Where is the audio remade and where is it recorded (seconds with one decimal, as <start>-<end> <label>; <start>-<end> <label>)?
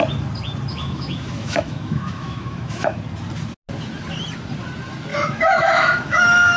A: 0.0-0.7 recorded; 0.7-3.0 remade; 3.0-5.1 recorded; 5.1-6.6 remade